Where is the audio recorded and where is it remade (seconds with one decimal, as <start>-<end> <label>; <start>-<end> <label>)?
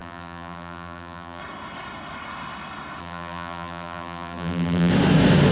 0.0-1.4 remade; 1.4-3.0 recorded; 3.0-4.9 remade; 4.9-5.5 recorded